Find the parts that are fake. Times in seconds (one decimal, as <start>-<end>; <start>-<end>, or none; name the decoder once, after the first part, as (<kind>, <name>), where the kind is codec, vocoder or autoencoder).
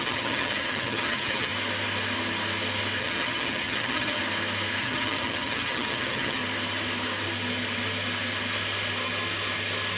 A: 0.0-1.5 (vocoder, HiFi-GAN); 3.0-4.2; 4.8-6.4